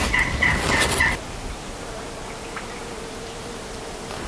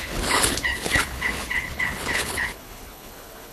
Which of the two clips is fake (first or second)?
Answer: second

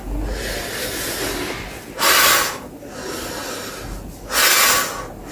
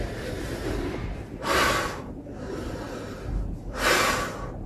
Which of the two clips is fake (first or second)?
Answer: second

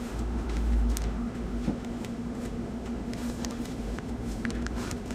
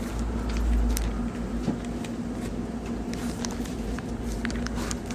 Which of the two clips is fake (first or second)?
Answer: first